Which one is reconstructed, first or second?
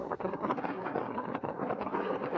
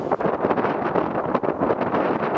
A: first